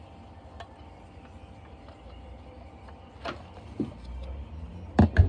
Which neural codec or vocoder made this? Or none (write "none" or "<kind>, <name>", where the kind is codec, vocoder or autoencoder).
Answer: none